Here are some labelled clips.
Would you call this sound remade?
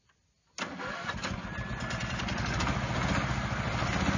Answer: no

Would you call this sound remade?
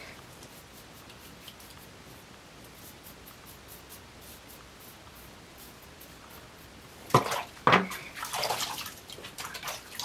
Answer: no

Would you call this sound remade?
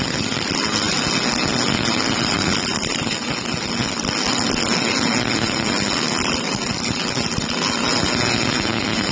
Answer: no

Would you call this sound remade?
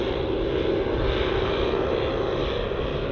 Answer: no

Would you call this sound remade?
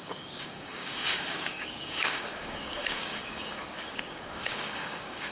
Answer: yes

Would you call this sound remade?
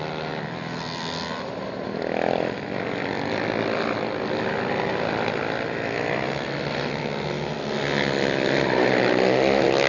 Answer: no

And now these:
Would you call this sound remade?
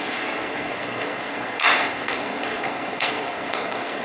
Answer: yes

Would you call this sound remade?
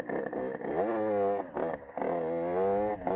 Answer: no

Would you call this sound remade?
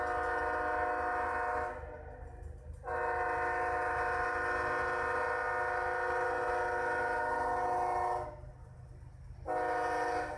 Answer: no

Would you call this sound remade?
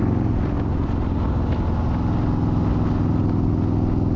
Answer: no